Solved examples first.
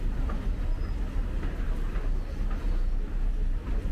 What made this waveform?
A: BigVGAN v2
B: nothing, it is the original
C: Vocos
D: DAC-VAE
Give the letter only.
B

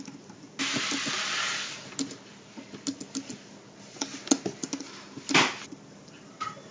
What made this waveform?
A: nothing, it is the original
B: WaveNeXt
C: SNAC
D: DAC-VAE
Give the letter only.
A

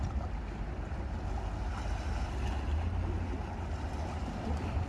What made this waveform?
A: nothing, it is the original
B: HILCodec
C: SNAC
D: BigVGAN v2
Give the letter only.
A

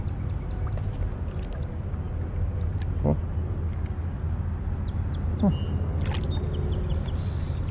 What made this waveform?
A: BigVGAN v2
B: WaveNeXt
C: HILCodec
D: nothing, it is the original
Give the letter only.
D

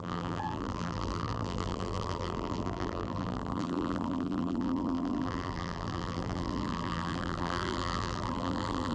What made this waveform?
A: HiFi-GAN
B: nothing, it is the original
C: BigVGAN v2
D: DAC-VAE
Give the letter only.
C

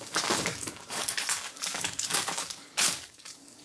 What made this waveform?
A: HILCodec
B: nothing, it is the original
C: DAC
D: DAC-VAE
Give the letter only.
C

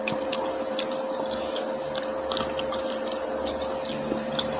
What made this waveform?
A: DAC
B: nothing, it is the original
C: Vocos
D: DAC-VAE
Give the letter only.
B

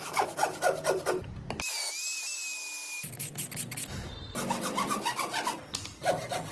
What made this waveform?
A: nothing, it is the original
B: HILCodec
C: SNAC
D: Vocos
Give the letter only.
A